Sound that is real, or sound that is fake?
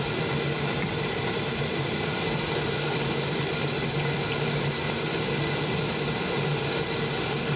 real